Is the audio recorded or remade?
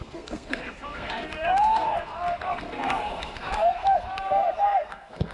remade